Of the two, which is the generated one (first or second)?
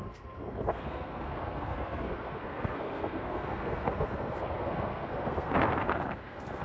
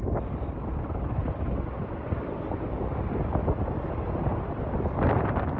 first